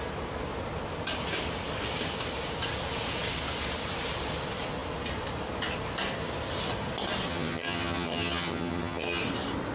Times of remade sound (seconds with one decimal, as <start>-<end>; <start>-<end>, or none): 7.3-9.2